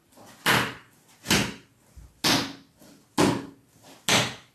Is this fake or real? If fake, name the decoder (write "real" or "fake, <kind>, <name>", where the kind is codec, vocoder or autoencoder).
real